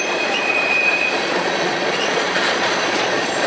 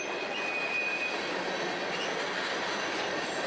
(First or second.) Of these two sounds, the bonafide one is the second